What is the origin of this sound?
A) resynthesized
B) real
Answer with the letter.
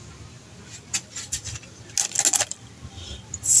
B